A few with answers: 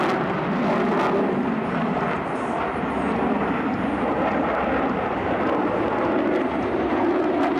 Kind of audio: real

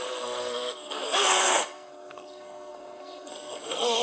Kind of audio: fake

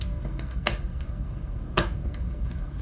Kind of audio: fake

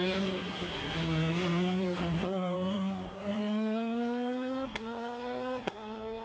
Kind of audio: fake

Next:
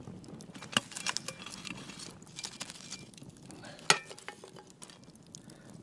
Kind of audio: real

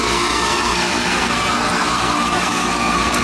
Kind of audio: fake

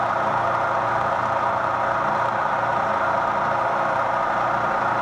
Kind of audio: real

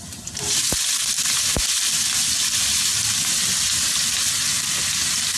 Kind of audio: real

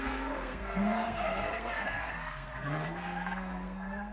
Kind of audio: fake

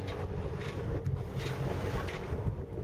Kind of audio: real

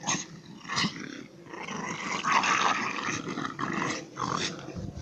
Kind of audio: real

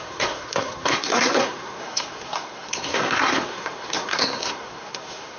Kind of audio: fake